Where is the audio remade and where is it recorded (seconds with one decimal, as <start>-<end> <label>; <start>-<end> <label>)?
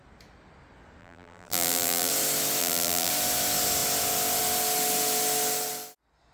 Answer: 0.0-1.0 recorded; 1.0-2.1 remade; 2.1-2.6 recorded; 2.6-3.1 remade; 3.1-6.3 recorded